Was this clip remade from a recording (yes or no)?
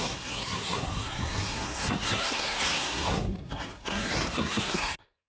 yes